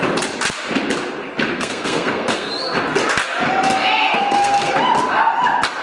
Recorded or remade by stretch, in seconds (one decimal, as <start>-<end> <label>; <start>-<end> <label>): 0.0-1.5 recorded; 1.5-2.5 remade; 2.5-4.1 recorded; 4.1-4.7 remade; 4.7-5.8 recorded